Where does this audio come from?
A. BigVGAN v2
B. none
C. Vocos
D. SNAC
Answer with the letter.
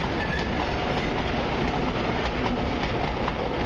B